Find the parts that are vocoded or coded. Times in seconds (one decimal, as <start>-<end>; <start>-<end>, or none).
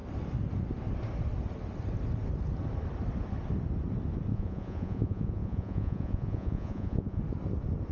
4.3-7.2